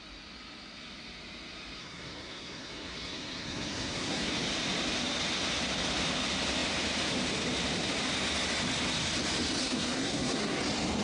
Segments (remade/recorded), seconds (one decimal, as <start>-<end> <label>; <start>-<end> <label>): 0.0-1.8 recorded; 1.8-4.3 remade; 4.3-9.6 recorded; 9.6-10.6 remade; 10.6-11.0 recorded